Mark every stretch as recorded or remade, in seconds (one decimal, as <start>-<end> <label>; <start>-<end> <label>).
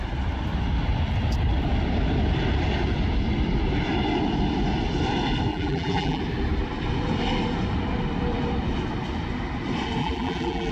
0.0-5.5 recorded; 5.5-6.2 remade; 6.2-10.0 recorded; 10.0-10.7 remade